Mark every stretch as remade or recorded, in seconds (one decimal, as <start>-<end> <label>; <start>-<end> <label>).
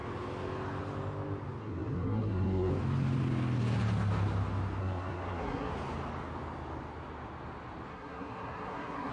0.0-1.6 recorded; 1.6-2.7 remade; 2.7-4.8 recorded; 4.8-5.7 remade; 5.7-7.9 recorded; 7.9-9.1 remade